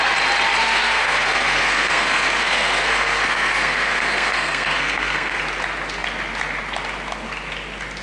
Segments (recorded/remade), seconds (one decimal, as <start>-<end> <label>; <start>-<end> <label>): 0.0-0.6 recorded; 0.6-5.4 remade; 5.4-8.0 recorded